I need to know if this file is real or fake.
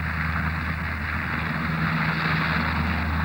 real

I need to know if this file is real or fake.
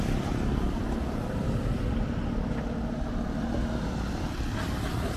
real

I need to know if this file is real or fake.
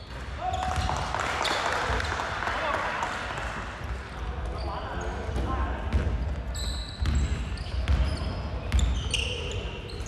real